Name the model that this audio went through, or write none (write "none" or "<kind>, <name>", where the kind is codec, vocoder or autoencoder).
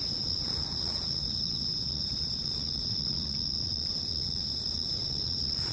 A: vocoder, Vocos